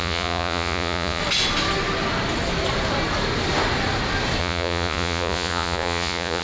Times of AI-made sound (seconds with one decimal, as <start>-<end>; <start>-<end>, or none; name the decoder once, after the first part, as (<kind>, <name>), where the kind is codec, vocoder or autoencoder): 0.0-1.2 (vocoder, Vocos); 4.4-6.4